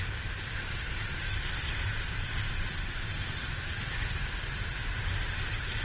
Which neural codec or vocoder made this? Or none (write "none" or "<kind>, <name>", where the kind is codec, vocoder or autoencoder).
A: vocoder, BigVGAN v2